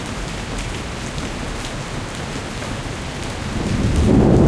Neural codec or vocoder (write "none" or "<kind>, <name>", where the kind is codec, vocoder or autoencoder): none